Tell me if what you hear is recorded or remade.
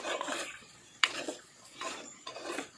remade